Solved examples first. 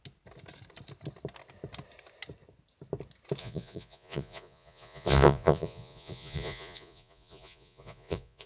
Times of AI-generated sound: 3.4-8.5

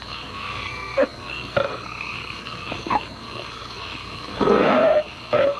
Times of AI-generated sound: 0.0-5.6

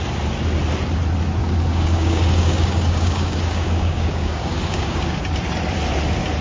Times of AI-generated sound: 1.4-5.2

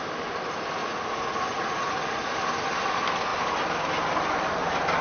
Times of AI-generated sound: 0.8-2.2